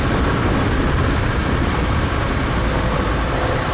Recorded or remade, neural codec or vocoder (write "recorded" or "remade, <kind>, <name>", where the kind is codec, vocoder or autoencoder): recorded